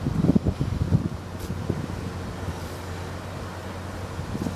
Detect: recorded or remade recorded